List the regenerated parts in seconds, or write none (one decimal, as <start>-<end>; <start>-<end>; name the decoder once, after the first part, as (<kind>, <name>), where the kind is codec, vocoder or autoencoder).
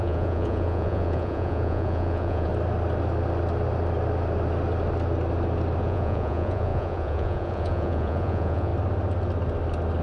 0.0-2.5 (vocoder, Vocos); 5.8-8.7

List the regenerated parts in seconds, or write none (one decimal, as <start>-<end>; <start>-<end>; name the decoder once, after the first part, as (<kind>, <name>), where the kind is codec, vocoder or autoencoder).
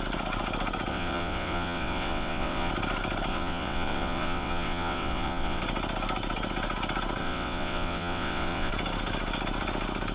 0.9-2.7 (vocoder, WaveNeXt); 3.3-5.6; 7.2-8.7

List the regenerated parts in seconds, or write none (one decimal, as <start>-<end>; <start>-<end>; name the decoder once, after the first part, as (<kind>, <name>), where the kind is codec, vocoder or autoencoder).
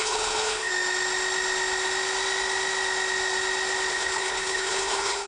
0.0-0.7 (codec, HILCodec); 3.9-5.3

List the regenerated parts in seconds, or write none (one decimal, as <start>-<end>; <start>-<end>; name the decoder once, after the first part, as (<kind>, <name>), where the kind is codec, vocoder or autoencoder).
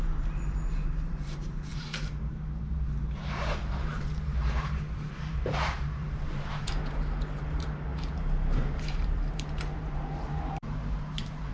0.0-11.5 (vocoder, BigVGAN v2)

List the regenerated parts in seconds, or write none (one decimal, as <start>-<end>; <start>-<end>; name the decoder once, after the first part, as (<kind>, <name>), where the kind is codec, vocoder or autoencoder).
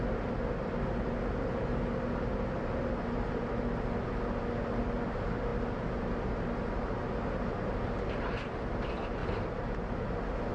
none